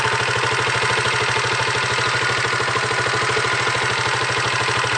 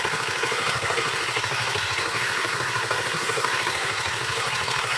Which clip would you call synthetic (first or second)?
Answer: second